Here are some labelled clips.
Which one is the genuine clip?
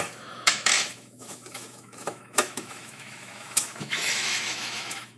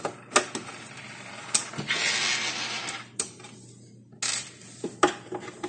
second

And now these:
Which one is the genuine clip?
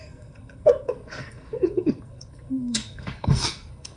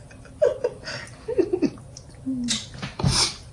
second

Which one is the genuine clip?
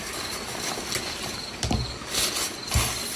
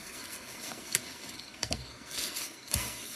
first